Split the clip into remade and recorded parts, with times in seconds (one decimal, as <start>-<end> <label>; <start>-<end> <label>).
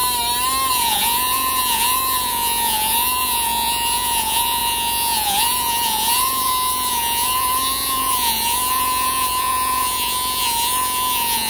0.0-0.7 recorded; 0.7-11.5 remade